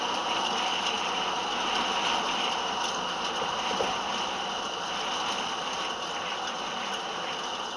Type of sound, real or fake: real